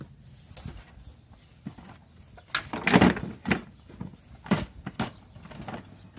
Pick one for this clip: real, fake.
real